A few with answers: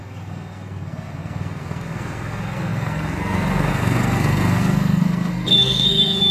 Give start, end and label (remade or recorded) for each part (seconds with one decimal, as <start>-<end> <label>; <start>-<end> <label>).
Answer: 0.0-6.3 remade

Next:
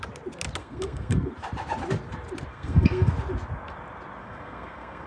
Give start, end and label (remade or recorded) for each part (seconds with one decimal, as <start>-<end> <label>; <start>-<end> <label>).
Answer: 0.0-0.6 recorded; 0.6-1.3 remade; 1.3-2.5 recorded; 2.5-3.1 remade; 3.1-4.2 recorded; 4.2-5.1 remade

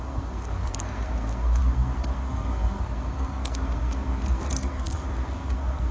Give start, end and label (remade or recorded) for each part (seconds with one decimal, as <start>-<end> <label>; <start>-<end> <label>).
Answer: 0.0-5.9 remade

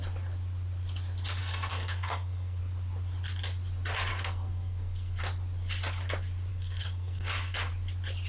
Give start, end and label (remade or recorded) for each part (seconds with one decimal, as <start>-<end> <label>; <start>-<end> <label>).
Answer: 0.0-1.4 recorded; 1.4-2.6 remade; 2.6-4.1 recorded; 4.1-5.2 remade; 5.2-6.5 recorded; 6.5-7.7 remade; 7.7-8.3 recorded

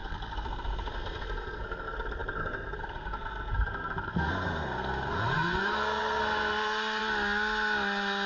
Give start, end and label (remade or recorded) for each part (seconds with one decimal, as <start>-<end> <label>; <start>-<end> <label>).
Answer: 0.0-7.0 remade; 7.0-8.3 recorded

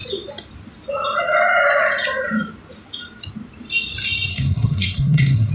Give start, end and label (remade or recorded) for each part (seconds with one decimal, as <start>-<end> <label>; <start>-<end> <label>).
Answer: 0.0-4.3 recorded; 4.3-5.5 remade